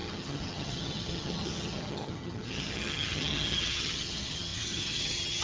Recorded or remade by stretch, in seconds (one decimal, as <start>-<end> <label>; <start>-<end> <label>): 0.0-5.4 remade